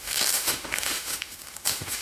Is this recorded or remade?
remade